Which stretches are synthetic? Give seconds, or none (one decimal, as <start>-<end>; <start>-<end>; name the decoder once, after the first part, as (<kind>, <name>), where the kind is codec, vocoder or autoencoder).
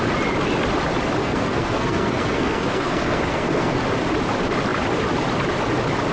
1.2-3.8 (codec, SNAC)